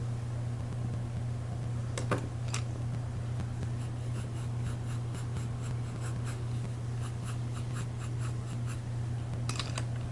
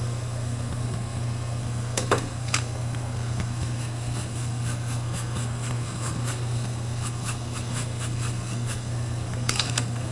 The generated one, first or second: second